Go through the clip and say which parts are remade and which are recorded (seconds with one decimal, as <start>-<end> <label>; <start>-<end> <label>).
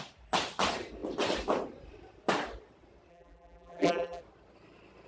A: 0.0-3.1 recorded; 3.1-4.2 remade; 4.2-5.1 recorded